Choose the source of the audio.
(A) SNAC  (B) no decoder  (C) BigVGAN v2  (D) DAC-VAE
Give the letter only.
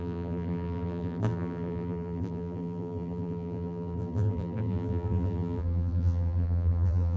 C